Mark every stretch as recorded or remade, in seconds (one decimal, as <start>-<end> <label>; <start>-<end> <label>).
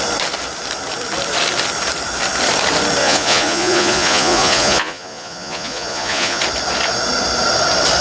0.0-3.0 recorded; 3.0-6.4 remade; 6.4-8.0 recorded